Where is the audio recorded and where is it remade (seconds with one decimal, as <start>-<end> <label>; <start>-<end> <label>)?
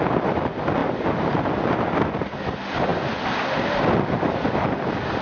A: 0.0-5.2 recorded